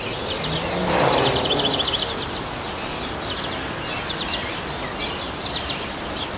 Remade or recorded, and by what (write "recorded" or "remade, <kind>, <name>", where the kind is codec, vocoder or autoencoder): recorded